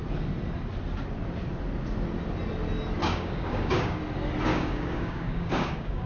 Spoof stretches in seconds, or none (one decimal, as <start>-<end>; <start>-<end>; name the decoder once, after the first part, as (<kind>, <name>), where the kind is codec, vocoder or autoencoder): 3.0-4.0 (codec, DAC); 4.5-6.1